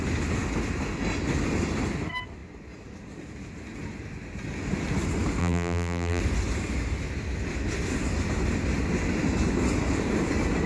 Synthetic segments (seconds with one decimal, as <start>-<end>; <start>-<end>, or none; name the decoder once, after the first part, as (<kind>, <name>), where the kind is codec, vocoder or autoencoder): 5.4-6.2 (vocoder, BigVGAN v2)